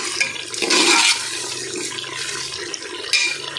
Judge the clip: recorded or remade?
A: recorded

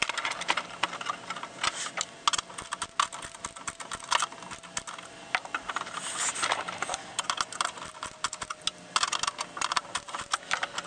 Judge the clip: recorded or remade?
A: recorded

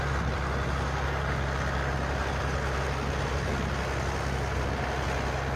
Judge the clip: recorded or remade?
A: recorded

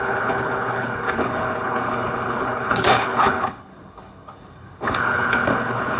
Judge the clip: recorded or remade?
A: remade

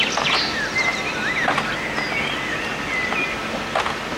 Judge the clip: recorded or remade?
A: recorded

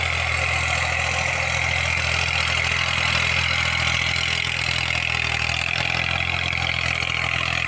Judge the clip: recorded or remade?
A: recorded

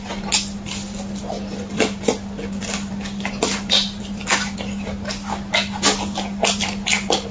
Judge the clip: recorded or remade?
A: recorded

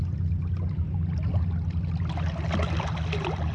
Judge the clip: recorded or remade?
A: recorded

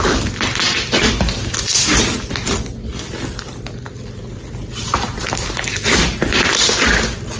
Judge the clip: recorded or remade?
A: recorded